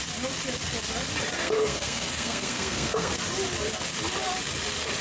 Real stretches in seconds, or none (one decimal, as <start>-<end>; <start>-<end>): 0.0-1.4; 3.1-5.0